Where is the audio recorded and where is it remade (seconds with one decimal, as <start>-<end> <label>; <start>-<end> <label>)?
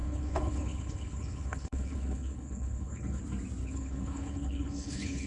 0.0-3.2 remade; 3.2-3.6 recorded; 3.6-5.3 remade